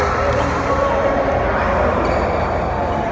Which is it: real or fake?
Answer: real